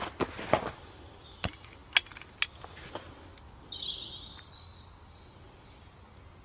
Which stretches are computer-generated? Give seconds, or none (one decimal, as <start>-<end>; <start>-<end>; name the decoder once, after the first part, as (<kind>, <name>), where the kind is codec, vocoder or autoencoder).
none